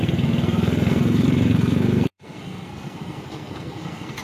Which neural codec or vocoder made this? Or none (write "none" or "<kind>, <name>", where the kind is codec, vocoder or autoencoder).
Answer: codec, SNAC